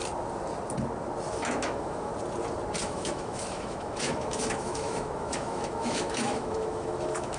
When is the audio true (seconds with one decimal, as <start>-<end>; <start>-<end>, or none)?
0.0-1.3; 2.1-2.8